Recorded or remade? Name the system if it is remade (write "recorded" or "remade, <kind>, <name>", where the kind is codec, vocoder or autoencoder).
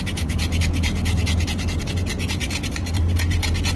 remade, vocoder, Vocos